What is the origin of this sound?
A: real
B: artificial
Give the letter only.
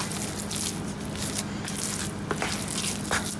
A